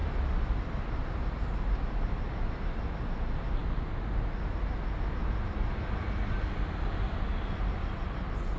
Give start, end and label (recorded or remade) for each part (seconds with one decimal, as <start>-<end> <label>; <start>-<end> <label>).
0.0-8.6 recorded